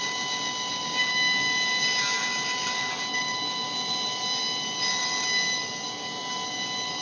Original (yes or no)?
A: yes